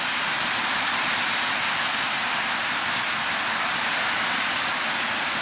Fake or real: real